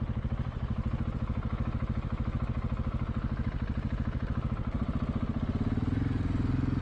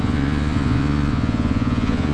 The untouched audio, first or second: first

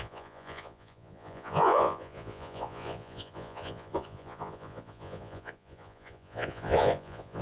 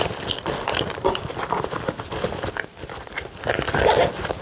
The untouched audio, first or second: second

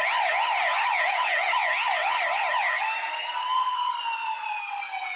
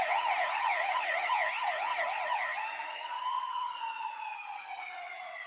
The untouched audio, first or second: first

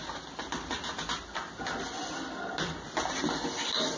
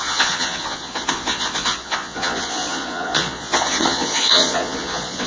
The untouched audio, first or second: first